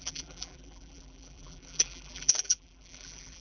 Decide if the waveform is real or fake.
fake